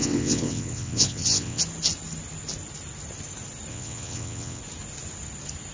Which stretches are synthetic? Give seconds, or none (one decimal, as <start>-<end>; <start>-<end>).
0.0-1.6; 3.7-4.6